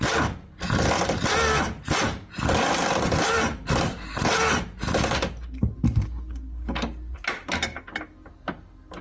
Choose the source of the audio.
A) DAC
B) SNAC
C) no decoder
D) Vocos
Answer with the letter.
C